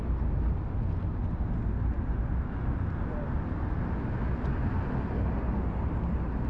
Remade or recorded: recorded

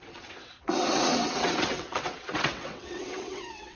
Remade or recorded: remade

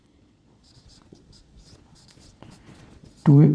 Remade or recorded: remade